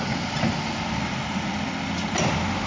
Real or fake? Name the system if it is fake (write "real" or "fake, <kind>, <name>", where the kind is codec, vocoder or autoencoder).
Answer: real